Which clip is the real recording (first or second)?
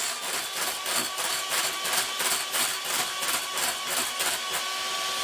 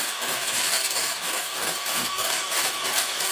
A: first